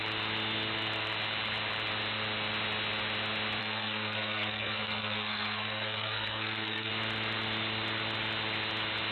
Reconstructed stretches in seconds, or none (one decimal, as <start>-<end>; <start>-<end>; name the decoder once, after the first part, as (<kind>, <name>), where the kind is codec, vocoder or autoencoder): 3.6-6.9 (codec, SNAC)